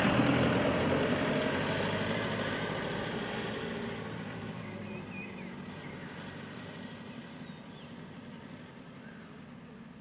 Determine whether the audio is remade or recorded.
remade